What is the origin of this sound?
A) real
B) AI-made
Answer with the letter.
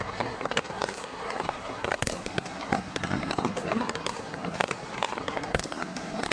B